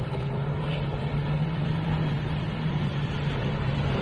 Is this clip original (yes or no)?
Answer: no